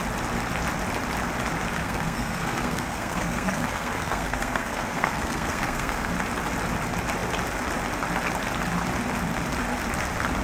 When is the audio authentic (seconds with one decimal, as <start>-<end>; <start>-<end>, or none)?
0.0-1.8; 6.1-10.4